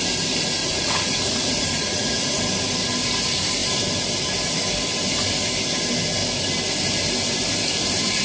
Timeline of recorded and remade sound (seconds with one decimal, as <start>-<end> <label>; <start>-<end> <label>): 0.0-0.6 recorded; 0.6-2.4 remade; 2.4-8.2 recorded